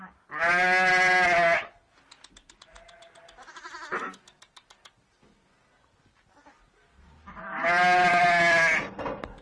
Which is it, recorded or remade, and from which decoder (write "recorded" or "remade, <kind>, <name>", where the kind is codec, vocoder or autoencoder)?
recorded